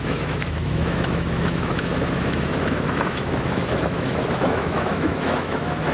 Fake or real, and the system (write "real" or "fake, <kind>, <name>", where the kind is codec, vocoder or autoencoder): fake, autoencoder, DAC-VAE